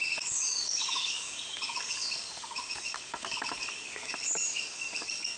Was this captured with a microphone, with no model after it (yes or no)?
no